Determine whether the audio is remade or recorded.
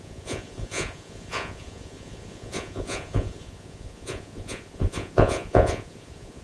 remade